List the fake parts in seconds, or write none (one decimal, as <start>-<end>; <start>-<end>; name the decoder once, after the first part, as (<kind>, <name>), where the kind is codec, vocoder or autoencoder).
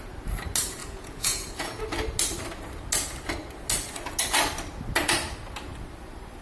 0.8-1.8 (vocoder, Vocos)